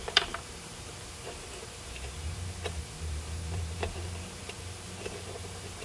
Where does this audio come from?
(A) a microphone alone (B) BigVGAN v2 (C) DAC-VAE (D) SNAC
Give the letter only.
B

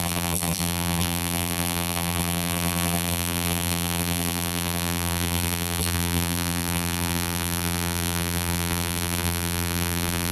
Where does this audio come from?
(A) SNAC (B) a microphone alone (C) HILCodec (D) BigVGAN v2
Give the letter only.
D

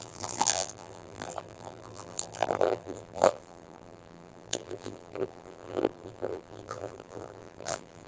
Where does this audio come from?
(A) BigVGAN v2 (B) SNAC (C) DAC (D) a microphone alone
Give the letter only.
A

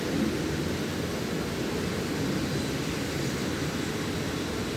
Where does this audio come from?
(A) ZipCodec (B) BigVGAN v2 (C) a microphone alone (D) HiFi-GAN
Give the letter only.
C